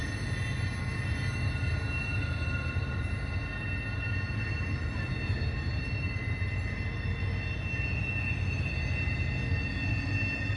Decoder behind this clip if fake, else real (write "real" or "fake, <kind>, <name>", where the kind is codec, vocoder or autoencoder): real